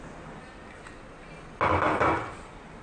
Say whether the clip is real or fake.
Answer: real